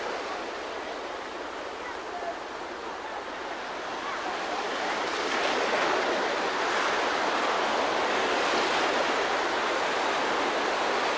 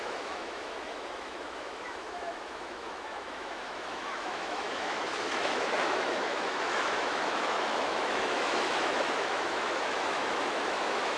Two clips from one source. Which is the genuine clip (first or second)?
first